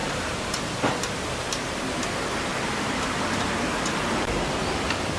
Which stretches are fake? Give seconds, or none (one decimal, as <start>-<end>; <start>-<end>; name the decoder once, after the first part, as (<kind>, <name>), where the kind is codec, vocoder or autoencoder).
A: 0.0-0.6 (vocoder, BigVGAN v2); 2.5-5.2